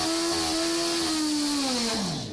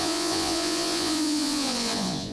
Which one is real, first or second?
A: first